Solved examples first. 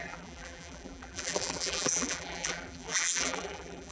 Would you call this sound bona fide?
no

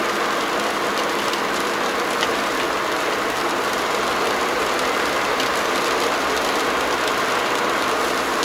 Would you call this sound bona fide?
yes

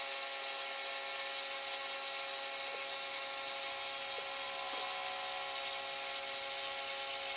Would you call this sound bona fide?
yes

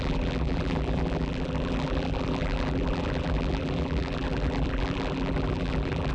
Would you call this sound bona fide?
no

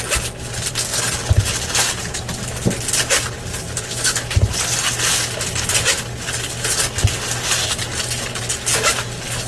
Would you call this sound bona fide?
yes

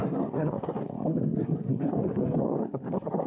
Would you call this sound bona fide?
no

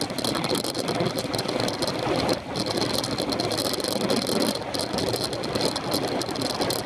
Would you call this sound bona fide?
yes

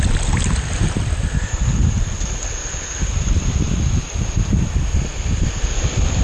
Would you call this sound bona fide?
yes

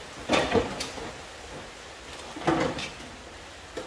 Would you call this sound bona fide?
yes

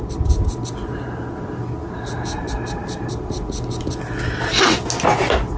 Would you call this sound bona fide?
yes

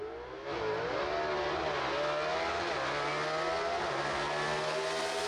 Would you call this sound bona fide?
yes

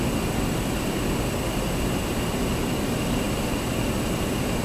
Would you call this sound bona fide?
yes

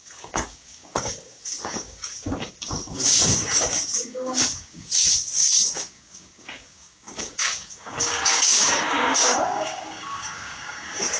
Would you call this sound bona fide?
no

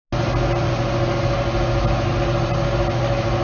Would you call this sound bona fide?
yes